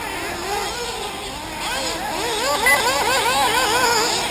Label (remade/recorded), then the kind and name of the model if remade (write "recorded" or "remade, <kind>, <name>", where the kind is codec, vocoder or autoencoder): recorded